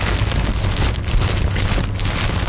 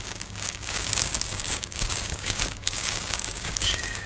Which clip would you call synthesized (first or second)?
second